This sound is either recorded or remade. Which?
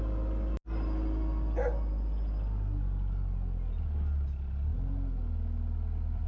recorded